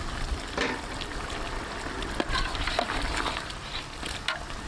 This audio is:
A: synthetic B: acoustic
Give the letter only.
B